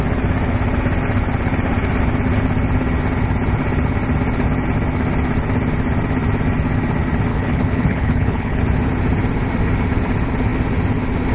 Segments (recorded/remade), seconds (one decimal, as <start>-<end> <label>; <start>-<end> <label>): 0.0-7.3 recorded; 7.3-8.6 remade; 8.6-11.3 recorded